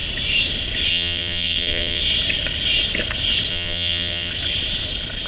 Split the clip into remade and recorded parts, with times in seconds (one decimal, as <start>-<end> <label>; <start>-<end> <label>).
0.0-0.9 recorded; 0.9-2.0 remade; 2.0-3.5 recorded; 3.5-4.3 remade; 4.3-5.3 recorded